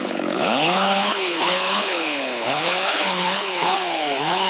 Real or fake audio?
fake